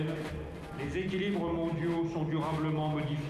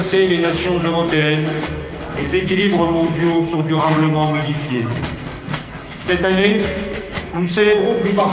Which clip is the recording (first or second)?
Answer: first